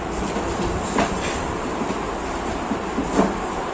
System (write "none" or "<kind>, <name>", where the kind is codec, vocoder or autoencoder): none